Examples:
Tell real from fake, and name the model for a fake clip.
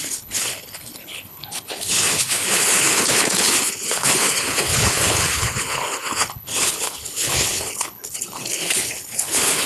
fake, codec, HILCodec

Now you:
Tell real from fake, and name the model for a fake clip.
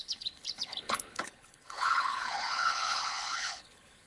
fake, codec, HILCodec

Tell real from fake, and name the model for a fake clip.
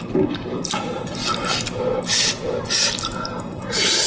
real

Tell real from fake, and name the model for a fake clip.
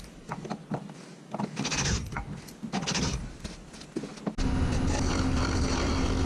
real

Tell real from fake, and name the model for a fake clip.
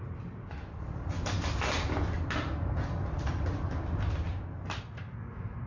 real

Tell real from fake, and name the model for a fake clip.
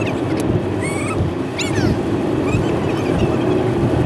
real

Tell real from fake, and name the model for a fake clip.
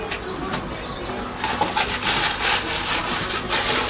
real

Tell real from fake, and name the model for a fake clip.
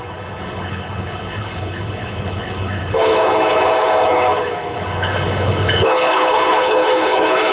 fake, codec, HILCodec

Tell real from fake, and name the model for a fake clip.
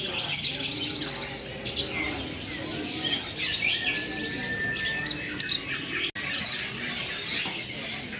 real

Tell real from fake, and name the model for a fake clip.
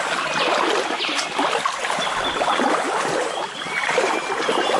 real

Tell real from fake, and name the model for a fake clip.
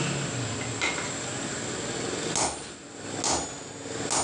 real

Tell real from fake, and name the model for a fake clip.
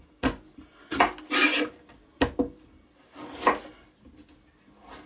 real